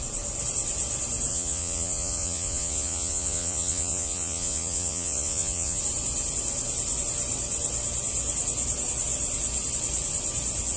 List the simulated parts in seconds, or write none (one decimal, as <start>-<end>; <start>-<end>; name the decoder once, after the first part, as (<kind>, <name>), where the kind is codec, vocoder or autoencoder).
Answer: 1.3-5.8 (vocoder, Vocos)